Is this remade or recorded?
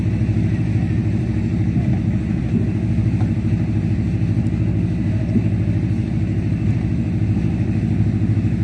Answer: recorded